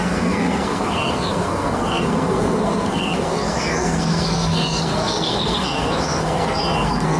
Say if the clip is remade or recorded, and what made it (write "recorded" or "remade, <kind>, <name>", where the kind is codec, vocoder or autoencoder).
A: remade, codec, SNAC